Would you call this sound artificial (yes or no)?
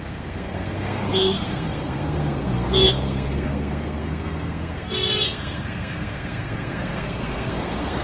yes